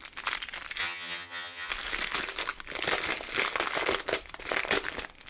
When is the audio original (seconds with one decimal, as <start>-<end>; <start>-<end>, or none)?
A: 0.0-0.8; 1.7-5.3